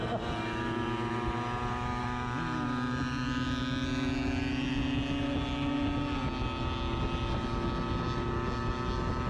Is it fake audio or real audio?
real